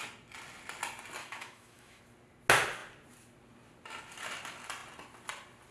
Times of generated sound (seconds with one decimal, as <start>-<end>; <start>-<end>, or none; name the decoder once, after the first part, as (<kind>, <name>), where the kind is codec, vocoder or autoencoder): 1.2-2.0 (autoencoder, DAC-VAE)